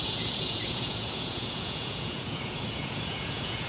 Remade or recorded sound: remade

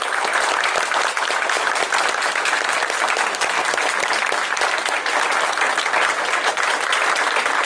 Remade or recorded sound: recorded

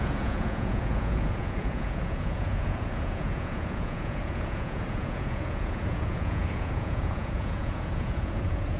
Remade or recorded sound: remade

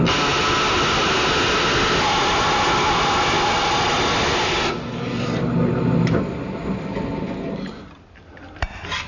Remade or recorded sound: recorded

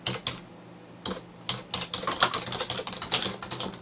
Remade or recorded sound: recorded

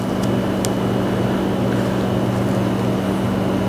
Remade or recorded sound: recorded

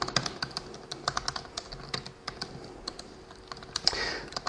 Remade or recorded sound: recorded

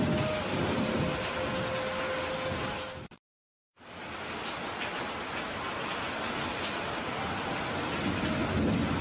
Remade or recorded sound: recorded